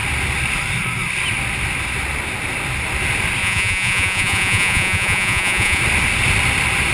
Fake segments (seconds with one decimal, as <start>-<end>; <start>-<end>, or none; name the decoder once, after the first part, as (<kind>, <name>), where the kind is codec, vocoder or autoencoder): 3.4-5.8 (vocoder, Vocos)

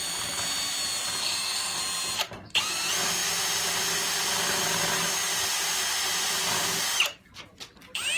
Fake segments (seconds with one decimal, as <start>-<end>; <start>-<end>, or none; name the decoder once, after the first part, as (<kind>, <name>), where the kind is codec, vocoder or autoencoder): 1.2-1.8 (codec, DAC)